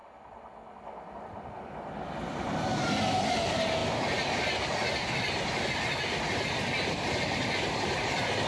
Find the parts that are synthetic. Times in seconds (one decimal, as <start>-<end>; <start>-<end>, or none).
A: none